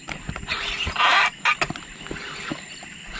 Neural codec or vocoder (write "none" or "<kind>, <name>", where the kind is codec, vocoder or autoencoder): none